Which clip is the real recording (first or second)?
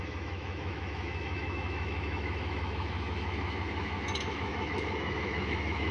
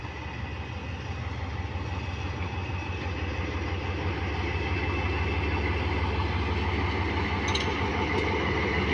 second